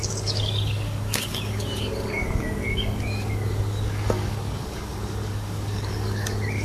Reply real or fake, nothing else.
fake